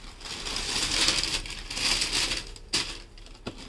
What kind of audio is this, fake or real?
real